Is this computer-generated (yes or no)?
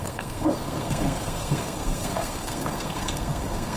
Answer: yes